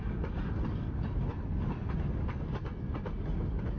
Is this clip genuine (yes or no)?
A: yes